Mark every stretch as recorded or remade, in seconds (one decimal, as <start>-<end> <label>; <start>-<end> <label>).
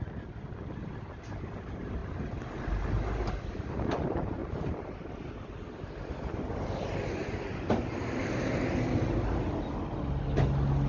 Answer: 0.0-10.9 recorded